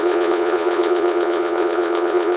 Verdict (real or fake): fake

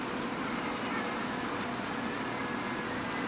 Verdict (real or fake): real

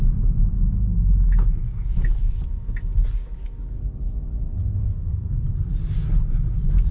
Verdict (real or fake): real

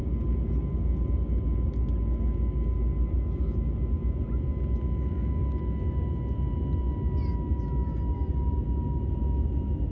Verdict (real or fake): real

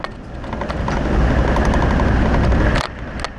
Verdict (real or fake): real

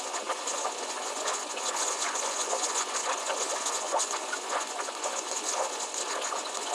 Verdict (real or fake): fake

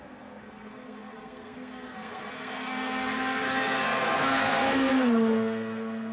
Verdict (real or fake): fake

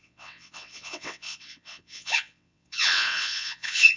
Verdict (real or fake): fake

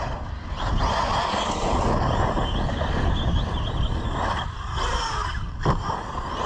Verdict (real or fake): real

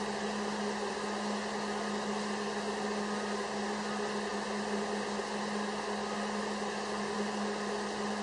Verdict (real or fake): real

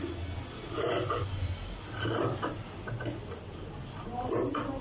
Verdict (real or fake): real